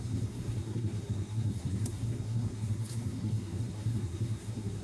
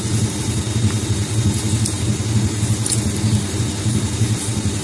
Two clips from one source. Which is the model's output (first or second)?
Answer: first